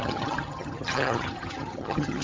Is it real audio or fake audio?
fake